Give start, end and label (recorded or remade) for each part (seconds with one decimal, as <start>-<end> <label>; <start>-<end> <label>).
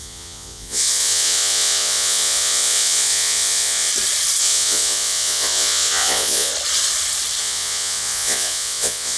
0.0-3.9 remade; 3.9-4.4 recorded; 4.4-6.5 remade; 6.5-7.4 recorded; 7.4-9.2 remade